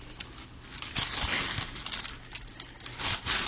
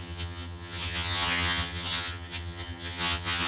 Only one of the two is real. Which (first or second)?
first